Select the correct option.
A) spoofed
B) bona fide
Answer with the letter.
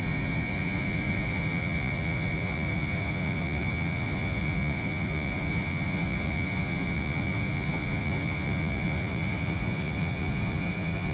A